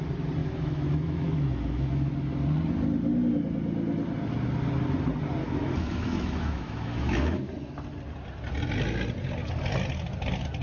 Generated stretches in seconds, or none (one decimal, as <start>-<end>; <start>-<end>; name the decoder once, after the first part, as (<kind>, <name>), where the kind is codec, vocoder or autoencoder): 0.4-2.1 (autoencoder, DAC-VAE); 5.4-7.5